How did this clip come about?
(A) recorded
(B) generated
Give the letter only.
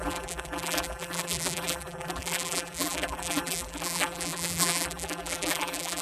B